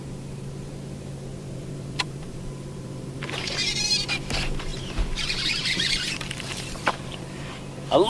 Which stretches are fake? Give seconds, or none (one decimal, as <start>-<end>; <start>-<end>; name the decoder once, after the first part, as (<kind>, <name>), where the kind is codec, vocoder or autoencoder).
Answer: 1.3-3.9 (vocoder, BigVGAN v2); 4.7-7.5